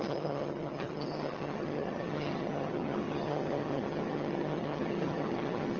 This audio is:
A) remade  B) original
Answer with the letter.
A